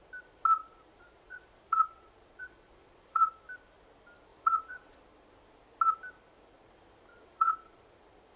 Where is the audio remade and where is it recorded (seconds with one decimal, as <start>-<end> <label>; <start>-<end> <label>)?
0.0-0.6 recorded; 0.6-3.4 remade; 3.4-4.3 recorded; 4.3-5.0 remade; 5.0-7.1 recorded; 7.1-7.8 remade; 7.8-8.4 recorded